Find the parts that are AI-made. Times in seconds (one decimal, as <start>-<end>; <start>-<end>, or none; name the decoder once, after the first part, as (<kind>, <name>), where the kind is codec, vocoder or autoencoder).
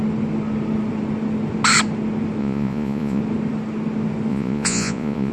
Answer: 2.4-3.2 (vocoder, Vocos); 4.3-5.3